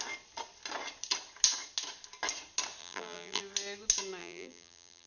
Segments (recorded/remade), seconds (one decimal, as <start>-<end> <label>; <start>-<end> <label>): 0.0-2.8 recorded; 2.8-3.4 remade; 3.4-4.2 recorded; 4.2-5.1 remade